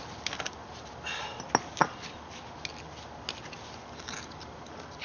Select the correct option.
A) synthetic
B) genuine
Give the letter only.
B